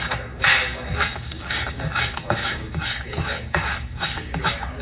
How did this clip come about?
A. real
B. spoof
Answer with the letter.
B